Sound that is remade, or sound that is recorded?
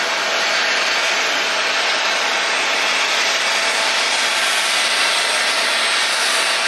recorded